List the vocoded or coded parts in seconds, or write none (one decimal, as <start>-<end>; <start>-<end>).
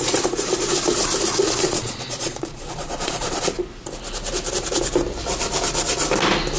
1.6-3.5